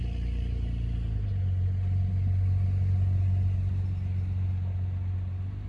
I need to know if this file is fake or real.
real